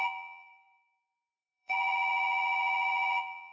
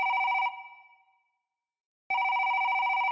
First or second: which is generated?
first